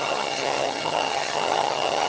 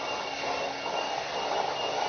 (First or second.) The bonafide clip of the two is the second